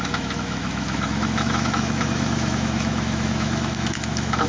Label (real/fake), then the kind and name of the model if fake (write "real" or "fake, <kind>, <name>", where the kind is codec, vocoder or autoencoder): fake, autoencoder, DAC-VAE